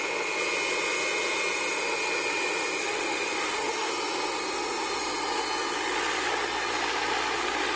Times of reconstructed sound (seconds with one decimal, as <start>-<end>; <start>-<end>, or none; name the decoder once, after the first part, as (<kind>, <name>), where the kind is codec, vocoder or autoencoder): 2.8-3.9 (autoencoder, DAC-VAE)